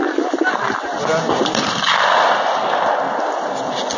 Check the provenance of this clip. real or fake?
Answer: real